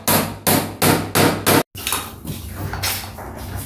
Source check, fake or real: real